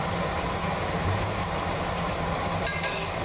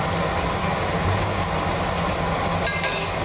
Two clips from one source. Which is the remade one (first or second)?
first